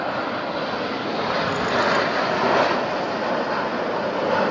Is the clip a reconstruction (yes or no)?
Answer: no